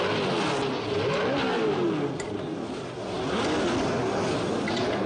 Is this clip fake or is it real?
real